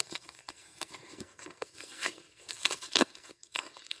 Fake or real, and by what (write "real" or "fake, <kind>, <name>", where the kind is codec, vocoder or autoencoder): fake, codec, SNAC